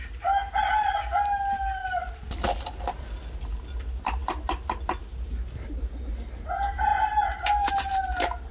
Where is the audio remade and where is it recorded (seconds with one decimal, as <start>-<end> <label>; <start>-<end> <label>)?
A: 0.0-8.5 recorded